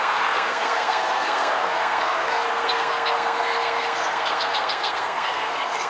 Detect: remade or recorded remade